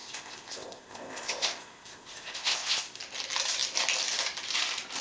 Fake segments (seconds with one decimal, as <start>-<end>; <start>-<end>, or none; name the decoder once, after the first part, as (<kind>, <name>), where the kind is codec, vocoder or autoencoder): 0.0-3.0 (codec, ZipCodec)